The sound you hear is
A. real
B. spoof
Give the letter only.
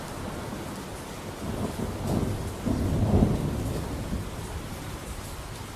A